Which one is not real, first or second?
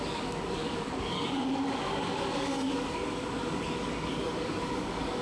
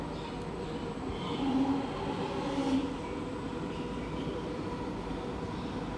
first